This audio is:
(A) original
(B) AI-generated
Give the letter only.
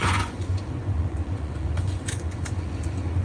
B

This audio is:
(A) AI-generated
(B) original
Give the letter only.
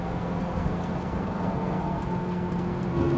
A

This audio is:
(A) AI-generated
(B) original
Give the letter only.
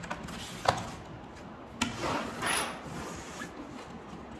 B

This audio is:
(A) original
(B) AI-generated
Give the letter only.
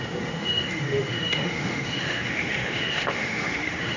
B